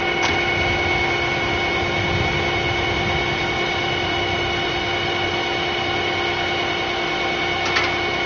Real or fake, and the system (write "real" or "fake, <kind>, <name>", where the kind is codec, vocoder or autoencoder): real